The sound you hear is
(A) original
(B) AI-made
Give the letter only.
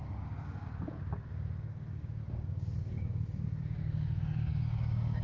B